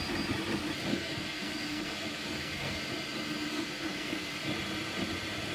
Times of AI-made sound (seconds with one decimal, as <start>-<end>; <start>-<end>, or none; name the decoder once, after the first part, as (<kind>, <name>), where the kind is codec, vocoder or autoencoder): 0.9-2.8 (codec, SNAC); 3.5-4.3